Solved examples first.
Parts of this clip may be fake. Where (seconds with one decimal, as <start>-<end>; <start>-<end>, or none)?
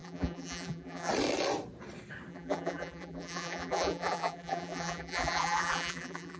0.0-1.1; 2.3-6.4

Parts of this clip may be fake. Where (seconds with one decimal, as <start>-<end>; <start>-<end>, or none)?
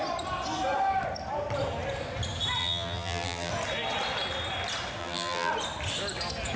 2.6-3.5; 5.0-5.5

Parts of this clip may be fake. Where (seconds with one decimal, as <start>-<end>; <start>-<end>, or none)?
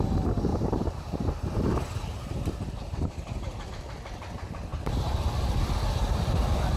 0.5-3.7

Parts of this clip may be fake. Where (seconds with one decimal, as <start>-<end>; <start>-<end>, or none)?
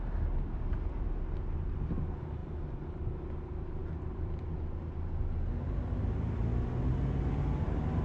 2.4-3.0; 3.8-4.4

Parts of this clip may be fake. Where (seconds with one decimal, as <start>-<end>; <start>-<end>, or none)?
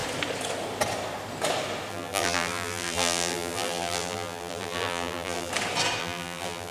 1.9-5.5; 6.0-6.7